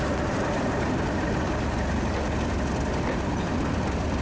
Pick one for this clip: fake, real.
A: real